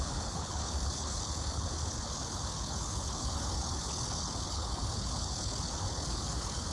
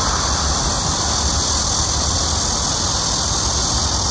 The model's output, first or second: first